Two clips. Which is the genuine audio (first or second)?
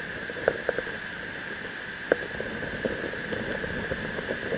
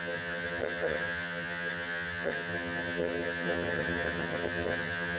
first